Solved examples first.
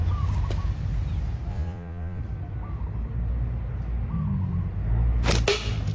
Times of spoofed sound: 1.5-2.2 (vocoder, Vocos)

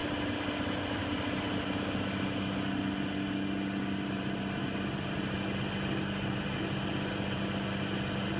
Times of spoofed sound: none